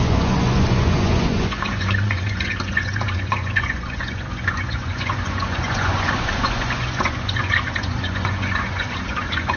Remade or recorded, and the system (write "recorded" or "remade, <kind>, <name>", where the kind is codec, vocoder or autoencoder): remade, vocoder, Vocos